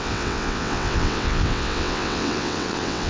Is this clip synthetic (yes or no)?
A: yes